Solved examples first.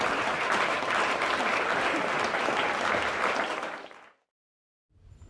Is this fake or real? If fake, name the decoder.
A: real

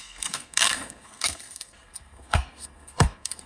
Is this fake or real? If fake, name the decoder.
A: fake, codec, SNAC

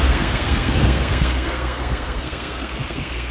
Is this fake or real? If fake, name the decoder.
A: fake, codec, SNAC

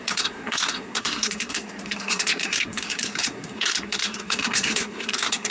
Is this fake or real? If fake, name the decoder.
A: fake, codec, SNAC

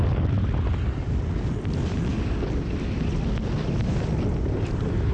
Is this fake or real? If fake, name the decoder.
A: real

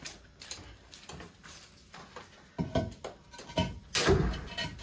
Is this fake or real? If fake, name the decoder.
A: real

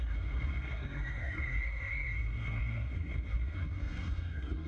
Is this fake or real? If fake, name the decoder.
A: fake, codec, SNAC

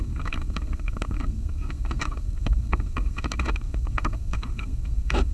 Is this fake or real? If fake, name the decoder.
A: fake, codec, SNAC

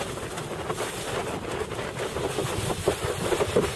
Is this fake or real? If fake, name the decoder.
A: real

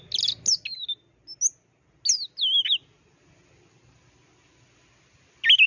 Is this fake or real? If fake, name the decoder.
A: real